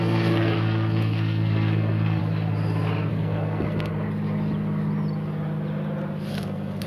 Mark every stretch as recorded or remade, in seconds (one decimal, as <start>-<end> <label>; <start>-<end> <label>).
0.0-2.2 remade; 2.2-3.1 recorded; 3.1-3.9 remade; 3.9-6.3 recorded; 6.3-6.9 remade